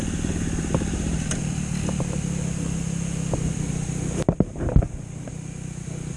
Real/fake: real